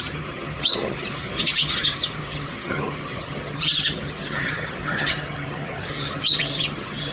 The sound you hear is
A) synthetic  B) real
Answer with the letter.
A